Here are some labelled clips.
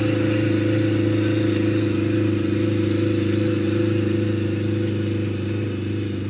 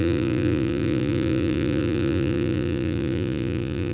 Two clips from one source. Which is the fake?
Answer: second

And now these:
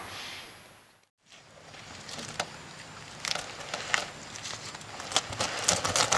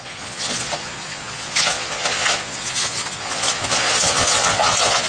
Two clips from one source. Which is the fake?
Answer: second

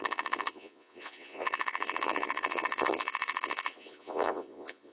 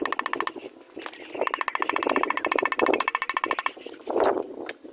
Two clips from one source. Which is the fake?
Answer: first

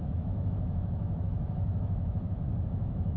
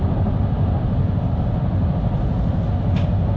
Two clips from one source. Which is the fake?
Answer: first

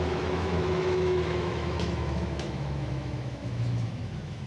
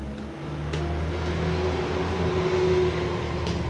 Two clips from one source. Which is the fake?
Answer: first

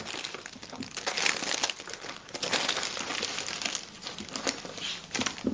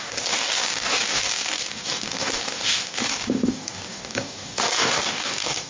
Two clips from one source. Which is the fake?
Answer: second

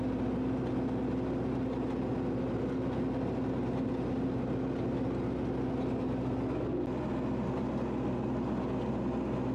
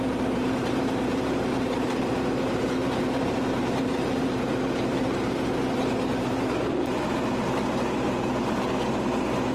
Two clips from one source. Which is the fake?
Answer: second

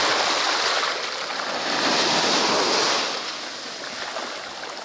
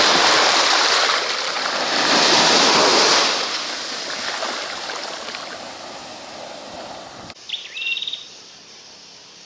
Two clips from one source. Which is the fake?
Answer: second